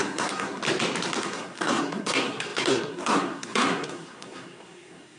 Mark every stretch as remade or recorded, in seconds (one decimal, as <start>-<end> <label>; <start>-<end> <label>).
0.0-0.6 remade; 0.6-1.2 recorded; 1.2-5.2 remade